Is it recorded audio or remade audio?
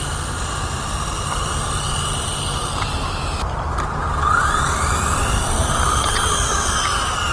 recorded